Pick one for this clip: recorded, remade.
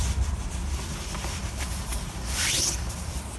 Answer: remade